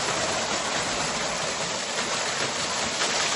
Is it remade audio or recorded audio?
recorded